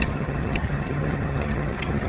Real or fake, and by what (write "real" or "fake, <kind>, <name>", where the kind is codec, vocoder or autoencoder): fake, vocoder, HiFi-GAN